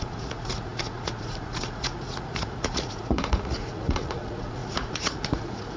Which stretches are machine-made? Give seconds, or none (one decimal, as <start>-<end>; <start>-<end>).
0.0-5.8